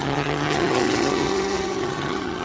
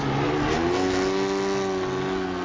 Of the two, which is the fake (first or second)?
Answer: first